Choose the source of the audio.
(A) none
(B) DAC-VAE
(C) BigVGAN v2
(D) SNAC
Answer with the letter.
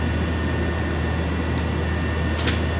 A